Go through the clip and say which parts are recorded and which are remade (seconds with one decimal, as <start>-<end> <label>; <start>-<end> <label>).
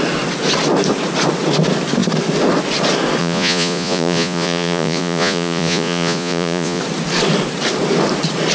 0.0-3.2 recorded; 3.2-6.8 remade; 6.8-8.5 recorded